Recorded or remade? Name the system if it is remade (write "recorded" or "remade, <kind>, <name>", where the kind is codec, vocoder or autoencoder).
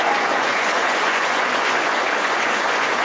remade, vocoder, Vocos